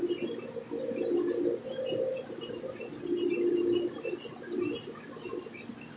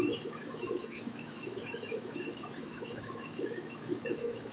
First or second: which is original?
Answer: first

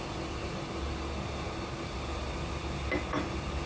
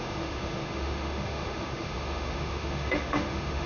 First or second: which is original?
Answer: first